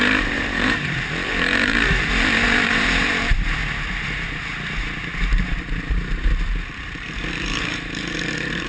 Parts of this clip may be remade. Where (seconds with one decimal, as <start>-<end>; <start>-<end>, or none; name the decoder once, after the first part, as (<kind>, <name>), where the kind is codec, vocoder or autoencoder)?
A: 0.0-3.6 (vocoder, BigVGAN v2); 5.6-8.7